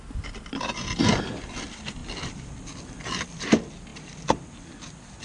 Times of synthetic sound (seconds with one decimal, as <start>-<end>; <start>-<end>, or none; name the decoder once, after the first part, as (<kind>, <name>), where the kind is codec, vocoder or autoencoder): none